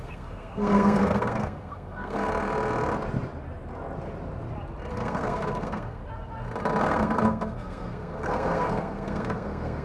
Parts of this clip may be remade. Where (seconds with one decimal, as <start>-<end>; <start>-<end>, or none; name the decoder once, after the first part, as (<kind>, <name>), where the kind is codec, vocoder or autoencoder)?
0.0-2.3 (codec, SNAC); 4.9-6.0; 6.8-9.8